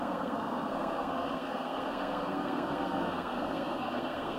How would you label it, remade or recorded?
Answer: remade